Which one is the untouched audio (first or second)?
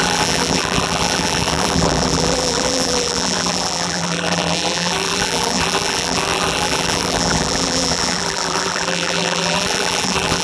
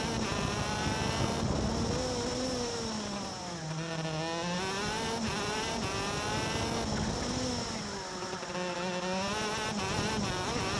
second